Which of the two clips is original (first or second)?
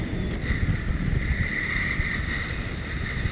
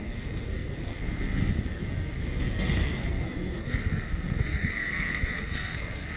first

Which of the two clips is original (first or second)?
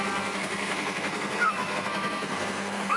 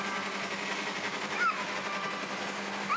second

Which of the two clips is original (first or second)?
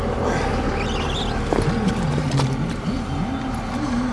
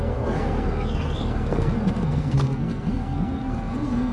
first